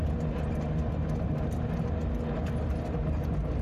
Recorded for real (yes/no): yes